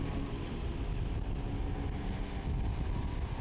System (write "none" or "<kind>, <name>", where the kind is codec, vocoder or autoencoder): none